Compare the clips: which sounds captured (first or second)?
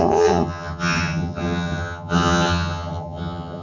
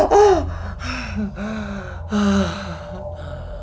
second